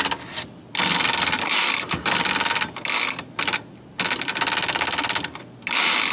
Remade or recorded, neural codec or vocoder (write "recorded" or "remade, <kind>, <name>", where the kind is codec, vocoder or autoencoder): recorded